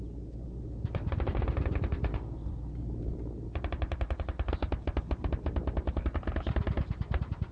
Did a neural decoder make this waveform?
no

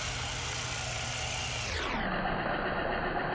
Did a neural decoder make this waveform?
no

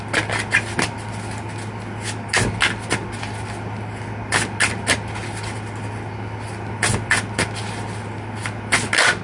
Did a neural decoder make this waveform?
no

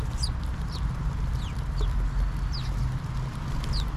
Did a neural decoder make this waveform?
no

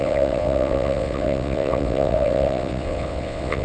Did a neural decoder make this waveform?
yes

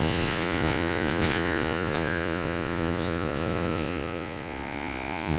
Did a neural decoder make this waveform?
yes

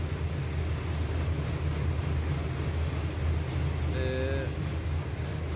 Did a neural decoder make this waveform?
no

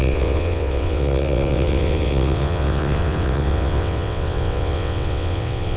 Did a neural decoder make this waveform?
yes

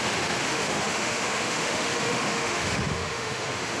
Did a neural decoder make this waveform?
yes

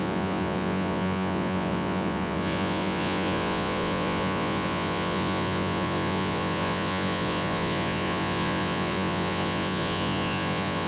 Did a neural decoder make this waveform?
yes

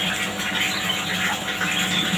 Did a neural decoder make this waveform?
no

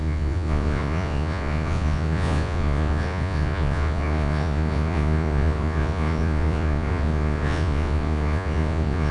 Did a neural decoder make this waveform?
yes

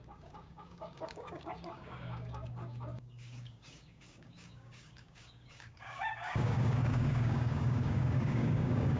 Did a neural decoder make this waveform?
yes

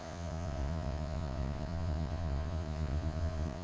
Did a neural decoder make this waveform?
yes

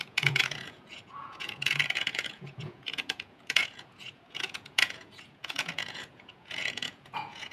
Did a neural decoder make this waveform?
yes